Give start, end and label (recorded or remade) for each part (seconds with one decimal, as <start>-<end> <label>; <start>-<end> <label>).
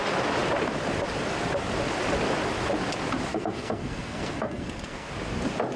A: 0.0-3.3 recorded; 3.3-5.1 remade; 5.1-5.8 recorded